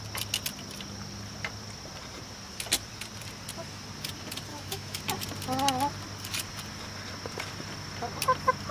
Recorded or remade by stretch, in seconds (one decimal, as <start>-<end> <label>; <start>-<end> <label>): 0.0-4.5 recorded; 4.5-5.0 remade; 5.0-8.7 recorded